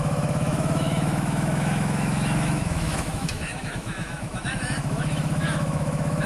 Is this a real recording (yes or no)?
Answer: no